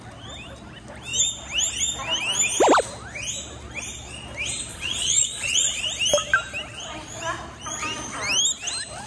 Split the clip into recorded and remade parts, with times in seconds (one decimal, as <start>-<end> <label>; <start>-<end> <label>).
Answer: 0.0-4.7 recorded; 4.7-5.8 remade; 5.8-9.1 recorded